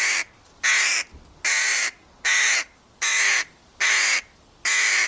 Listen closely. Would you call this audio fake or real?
real